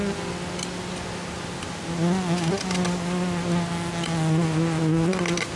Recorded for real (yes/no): yes